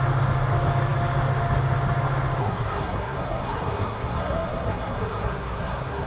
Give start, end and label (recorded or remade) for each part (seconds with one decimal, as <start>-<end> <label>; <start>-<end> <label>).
0.0-2.4 recorded; 2.4-6.1 remade